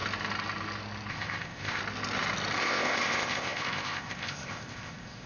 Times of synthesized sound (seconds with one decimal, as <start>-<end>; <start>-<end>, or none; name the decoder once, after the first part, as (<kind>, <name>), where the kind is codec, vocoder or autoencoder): 1.1-1.8 (codec, ZipCodec); 2.6-5.3